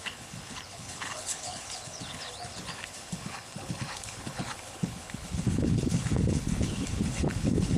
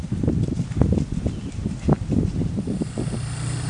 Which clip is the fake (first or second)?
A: first